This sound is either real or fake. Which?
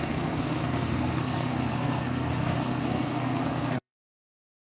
fake